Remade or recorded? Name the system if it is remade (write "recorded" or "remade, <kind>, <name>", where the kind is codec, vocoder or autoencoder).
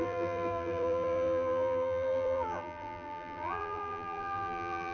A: remade, vocoder, BigVGAN v2